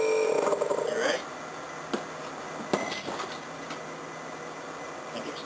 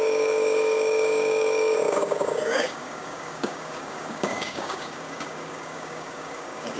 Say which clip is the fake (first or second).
second